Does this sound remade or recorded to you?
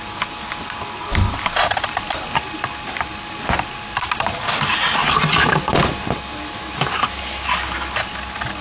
recorded